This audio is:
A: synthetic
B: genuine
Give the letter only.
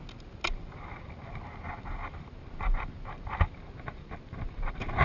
B